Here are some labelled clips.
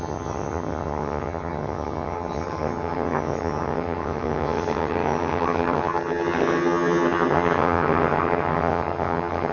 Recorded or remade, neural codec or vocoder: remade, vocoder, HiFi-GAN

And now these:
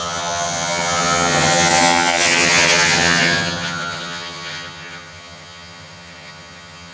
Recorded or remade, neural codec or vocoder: remade, vocoder, HiFi-GAN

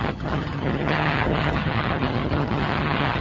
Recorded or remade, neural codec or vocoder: remade, vocoder, HiFi-GAN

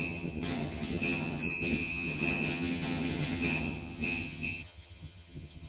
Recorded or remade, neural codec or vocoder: remade, vocoder, HiFi-GAN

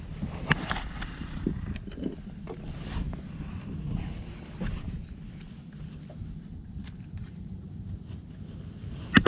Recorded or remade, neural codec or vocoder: recorded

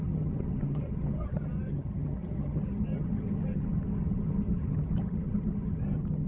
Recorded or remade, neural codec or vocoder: remade, vocoder, HiFi-GAN